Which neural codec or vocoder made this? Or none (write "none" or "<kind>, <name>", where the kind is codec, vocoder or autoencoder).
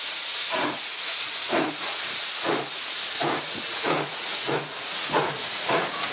vocoder, Vocos